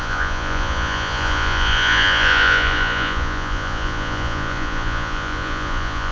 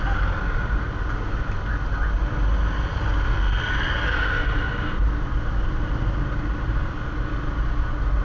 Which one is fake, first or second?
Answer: first